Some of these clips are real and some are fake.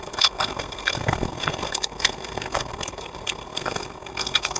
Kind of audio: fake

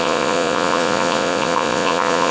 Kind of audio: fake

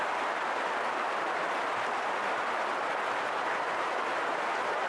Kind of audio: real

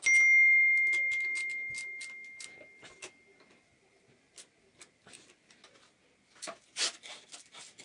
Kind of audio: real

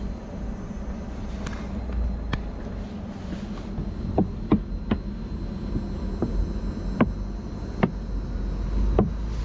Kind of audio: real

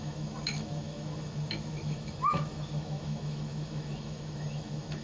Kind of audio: fake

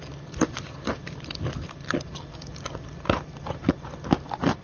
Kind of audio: fake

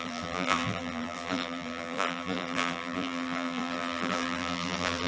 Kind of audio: fake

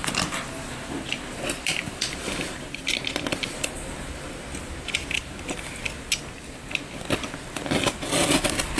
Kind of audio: real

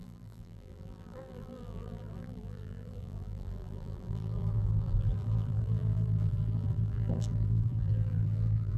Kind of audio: fake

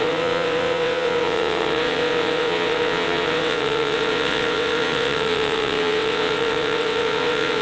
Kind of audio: fake